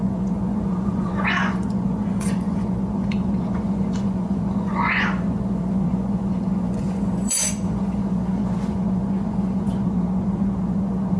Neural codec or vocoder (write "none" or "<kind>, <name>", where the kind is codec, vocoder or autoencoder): vocoder, Vocos